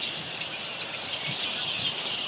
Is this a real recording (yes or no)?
yes